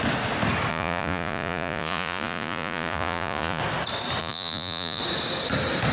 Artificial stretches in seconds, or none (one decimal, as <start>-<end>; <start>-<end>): 0.7-3.6; 4.2-5.0